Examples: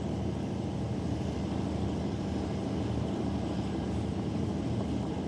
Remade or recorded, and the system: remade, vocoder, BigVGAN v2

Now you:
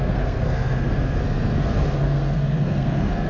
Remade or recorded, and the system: remade, codec, SNAC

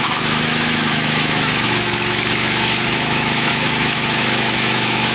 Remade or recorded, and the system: remade, autoencoder, DAC-VAE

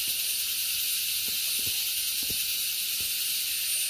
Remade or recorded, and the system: recorded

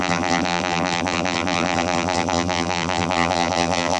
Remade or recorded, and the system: remade, vocoder, BigVGAN v2